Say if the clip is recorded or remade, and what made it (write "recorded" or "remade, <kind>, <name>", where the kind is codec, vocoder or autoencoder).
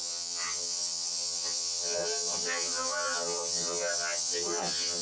remade, vocoder, HiFi-GAN